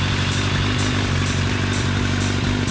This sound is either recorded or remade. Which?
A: recorded